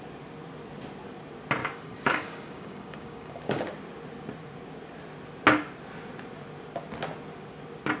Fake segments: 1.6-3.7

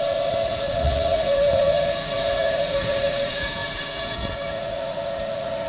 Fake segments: 0.0-5.7

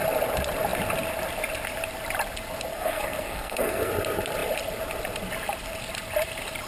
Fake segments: 2.7-3.9

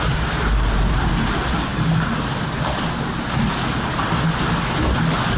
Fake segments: none

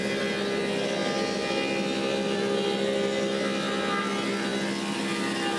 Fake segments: none

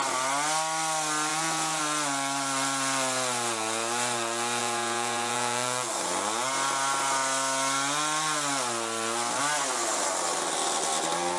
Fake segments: 1.3-1.8; 4.6-5.9

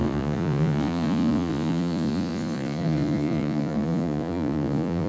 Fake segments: 0.0-5.1

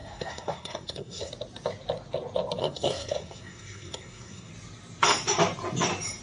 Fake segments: 0.0-1.3; 2.6-4.5